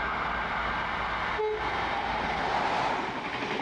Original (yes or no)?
yes